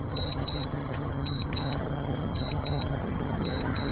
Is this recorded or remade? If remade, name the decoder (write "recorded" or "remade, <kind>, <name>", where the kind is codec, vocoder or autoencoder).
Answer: remade, vocoder, HiFi-GAN